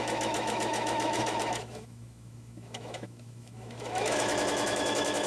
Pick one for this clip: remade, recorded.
remade